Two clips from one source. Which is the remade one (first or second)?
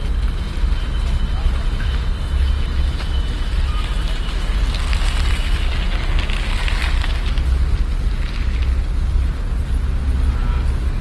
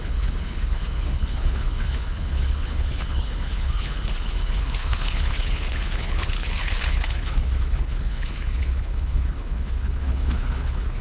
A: second